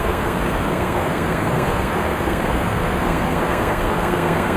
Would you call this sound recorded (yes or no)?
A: no